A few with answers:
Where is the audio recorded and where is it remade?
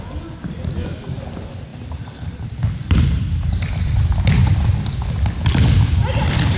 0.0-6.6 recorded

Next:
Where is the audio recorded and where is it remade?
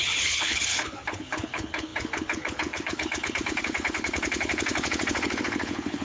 0.0-6.0 remade